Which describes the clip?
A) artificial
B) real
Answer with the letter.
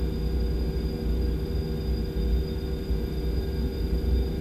B